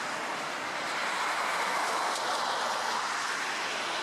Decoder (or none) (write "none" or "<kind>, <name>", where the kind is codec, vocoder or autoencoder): none